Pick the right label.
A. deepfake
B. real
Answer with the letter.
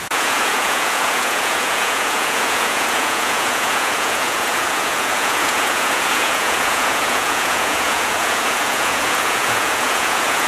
A